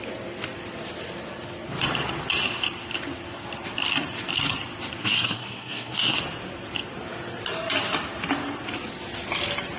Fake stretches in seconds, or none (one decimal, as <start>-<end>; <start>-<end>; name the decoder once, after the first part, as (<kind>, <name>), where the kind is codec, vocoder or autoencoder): 5.0-6.2 (codec, SNAC)